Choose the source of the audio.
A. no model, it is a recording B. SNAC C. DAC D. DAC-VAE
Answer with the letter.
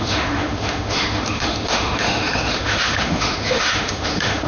D